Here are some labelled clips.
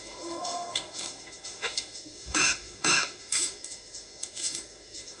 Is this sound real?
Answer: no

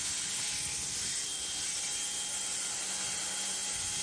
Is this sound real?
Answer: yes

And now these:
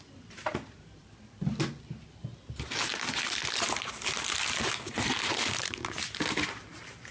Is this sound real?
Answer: yes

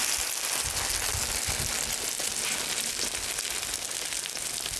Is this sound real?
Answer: yes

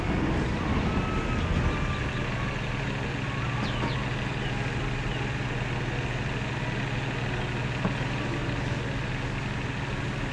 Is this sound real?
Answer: yes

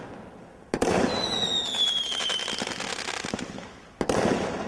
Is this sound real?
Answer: yes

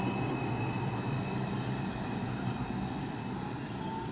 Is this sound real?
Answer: yes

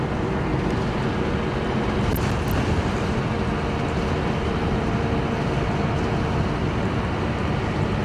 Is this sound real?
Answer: yes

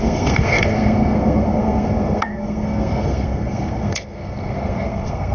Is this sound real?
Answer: no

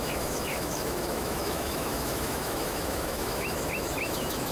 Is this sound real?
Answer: no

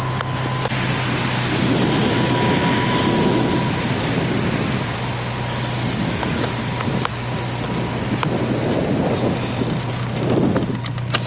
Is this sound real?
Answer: yes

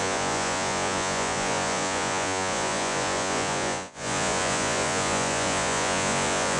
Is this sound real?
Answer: no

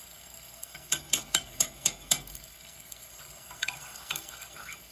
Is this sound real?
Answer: no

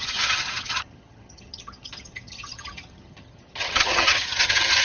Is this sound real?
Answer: no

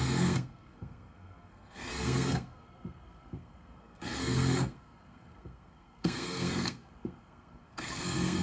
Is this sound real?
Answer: no